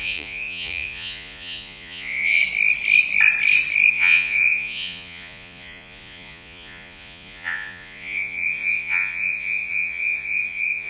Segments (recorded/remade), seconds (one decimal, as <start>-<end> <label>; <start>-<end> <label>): 0.0-2.4 remade; 2.4-3.9 recorded; 3.9-10.9 remade